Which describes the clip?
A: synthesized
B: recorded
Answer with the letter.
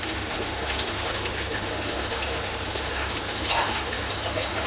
A